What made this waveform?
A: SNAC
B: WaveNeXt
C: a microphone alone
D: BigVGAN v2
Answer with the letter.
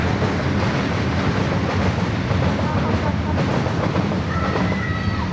C